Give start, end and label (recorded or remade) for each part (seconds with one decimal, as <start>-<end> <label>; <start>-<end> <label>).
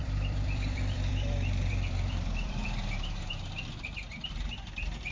0.0-3.1 remade; 3.1-5.1 recorded